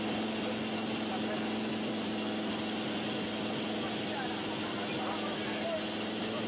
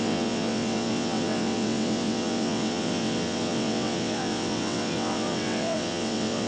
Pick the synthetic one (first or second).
second